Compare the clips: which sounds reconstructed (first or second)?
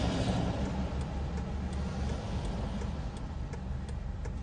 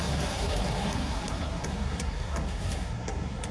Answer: second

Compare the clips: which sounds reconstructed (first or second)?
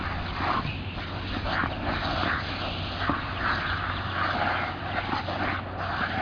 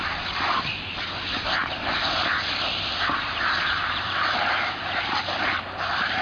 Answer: second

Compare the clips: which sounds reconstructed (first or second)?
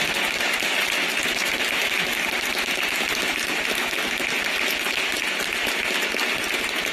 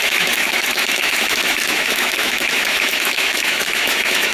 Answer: second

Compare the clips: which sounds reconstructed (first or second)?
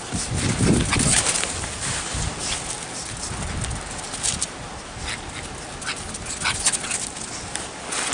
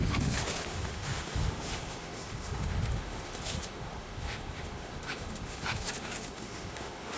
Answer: second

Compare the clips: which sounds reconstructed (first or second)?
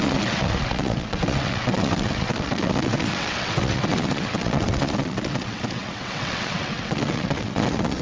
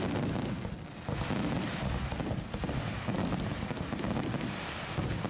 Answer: first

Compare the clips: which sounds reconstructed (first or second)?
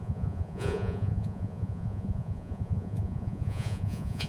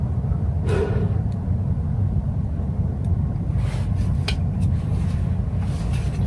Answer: first